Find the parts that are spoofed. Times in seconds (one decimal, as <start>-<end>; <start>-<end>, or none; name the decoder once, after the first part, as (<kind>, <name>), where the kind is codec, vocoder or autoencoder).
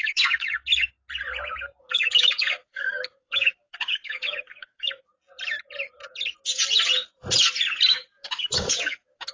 0.0-0.6 (codec, DAC); 1.8-5.1; 7.9-9.3